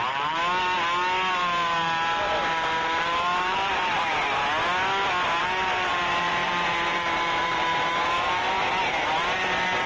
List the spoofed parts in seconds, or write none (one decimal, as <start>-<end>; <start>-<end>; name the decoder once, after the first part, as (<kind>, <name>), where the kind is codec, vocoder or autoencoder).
0.0-0.4 (vocoder, BigVGAN v2); 1.3-4.4; 5.4-9.9